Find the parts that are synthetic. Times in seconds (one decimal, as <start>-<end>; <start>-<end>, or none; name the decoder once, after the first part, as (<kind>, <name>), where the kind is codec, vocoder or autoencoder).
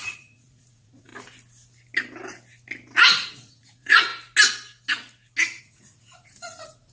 0.0-1.1 (vocoder, Vocos); 3.3-4.1; 5.6-6.9